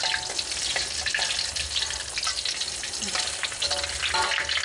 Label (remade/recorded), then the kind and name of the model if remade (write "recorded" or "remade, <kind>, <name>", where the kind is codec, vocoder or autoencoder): recorded